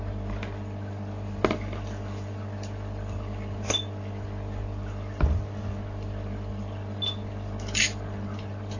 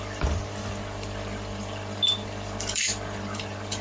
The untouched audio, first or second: first